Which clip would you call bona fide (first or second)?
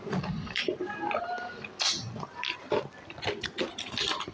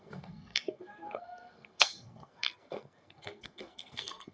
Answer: first